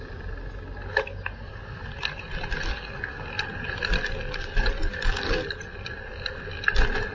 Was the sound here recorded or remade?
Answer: recorded